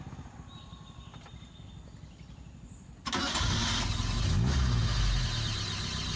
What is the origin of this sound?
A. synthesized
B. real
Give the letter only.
B